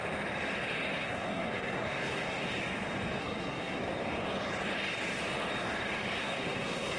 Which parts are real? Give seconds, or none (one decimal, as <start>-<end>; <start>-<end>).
0.0-0.9; 2.5-3.2; 3.8-6.2